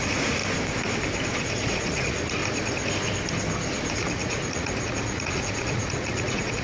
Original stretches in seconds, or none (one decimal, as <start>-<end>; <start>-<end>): 0.4-1.4; 2.4-3.9